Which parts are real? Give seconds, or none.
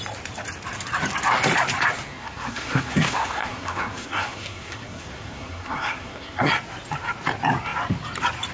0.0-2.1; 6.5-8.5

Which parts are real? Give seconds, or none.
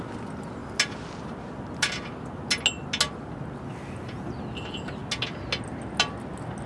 0.0-6.7